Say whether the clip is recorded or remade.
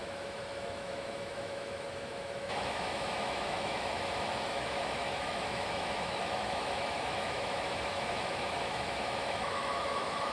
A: remade